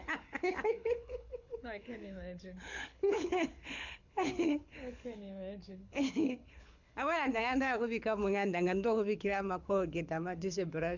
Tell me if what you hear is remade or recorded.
remade